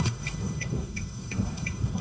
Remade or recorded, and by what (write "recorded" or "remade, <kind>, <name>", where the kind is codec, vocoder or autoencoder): remade, codec, SNAC